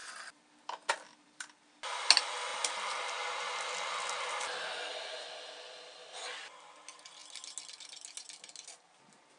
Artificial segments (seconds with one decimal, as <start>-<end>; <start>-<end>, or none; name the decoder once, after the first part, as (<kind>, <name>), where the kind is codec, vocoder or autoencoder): 0.0-1.6 (vocoder, BigVGAN v2)